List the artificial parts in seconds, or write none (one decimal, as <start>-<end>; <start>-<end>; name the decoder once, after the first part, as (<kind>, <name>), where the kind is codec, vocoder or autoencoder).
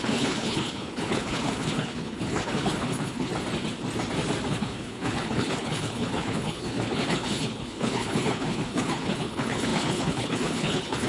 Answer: 0.0-3.3 (codec, HILCodec); 4.5-11.1